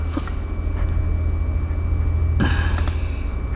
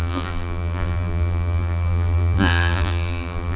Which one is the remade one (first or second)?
second